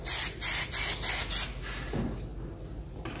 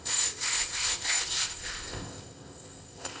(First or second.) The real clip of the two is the first